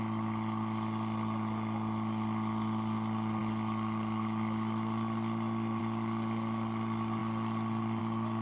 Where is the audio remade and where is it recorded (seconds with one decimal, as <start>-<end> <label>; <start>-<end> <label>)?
0.0-8.4 recorded